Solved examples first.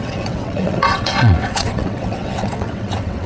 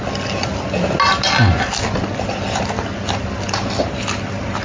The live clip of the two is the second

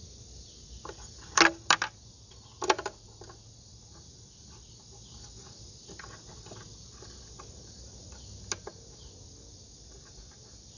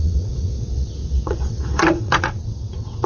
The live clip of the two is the first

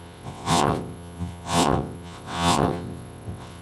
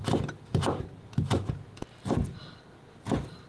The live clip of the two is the second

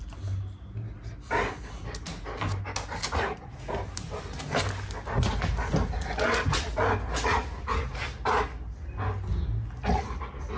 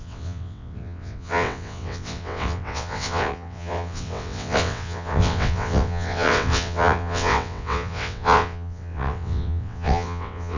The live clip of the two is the first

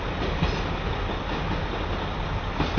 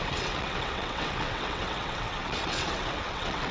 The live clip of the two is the first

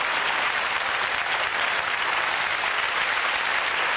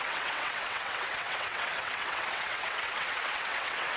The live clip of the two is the first